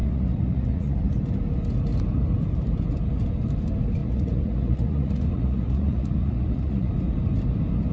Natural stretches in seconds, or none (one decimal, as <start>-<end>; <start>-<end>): 1.0-4.0; 6.9-7.9